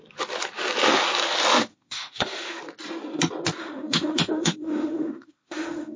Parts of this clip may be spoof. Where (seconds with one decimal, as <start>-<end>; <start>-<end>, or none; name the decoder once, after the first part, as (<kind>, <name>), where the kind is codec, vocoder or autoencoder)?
1.7-2.6 (autoencoder, DAC-VAE); 3.6-6.0